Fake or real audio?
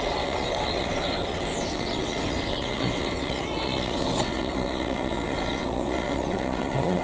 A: fake